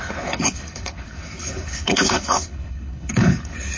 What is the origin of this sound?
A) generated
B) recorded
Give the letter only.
A